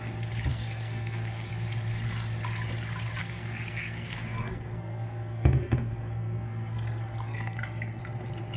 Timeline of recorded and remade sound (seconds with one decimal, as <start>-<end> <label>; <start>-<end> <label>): 0.0-0.5 recorded; 0.5-1.5 remade; 1.5-3.2 recorded; 3.2-8.0 remade; 8.0-8.6 recorded